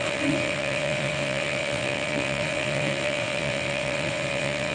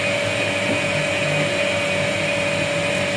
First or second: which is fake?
first